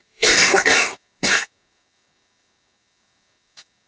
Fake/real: fake